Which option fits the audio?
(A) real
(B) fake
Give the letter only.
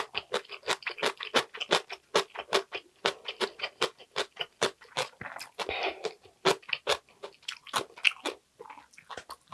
A